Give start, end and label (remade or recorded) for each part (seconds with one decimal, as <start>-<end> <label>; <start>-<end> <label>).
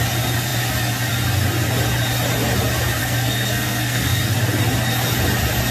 0.0-3.0 recorded; 3.0-4.2 remade; 4.2-5.7 recorded